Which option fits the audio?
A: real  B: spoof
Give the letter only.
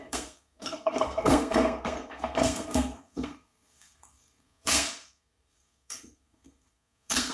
B